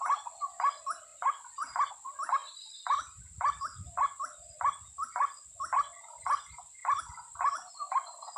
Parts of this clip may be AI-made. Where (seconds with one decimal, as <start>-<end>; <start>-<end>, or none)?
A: 1.1-1.9; 2.4-3.2